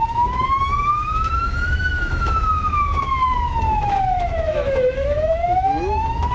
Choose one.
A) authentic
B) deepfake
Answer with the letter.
B